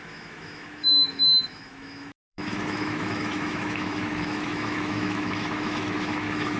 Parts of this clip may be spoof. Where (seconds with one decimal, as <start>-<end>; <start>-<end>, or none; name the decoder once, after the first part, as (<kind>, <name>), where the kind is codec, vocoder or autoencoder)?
0.0-6.6 (autoencoder, DAC-VAE)